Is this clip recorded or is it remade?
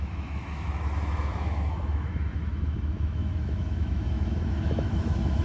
remade